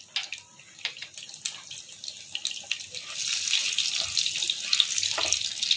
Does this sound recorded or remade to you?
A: recorded